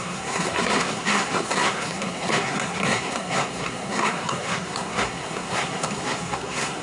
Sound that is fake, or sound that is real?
fake